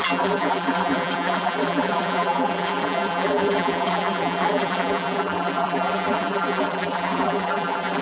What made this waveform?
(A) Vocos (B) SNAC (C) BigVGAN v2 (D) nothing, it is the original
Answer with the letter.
C